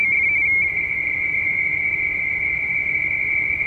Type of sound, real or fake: fake